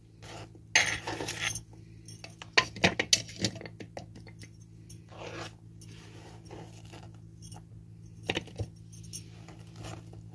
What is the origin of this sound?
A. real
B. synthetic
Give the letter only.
A